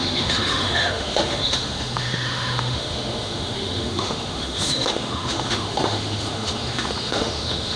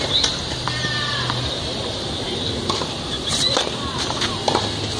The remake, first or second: first